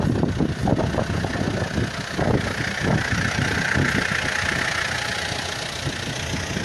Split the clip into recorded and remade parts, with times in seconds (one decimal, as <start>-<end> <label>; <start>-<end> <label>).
0.0-6.6 recorded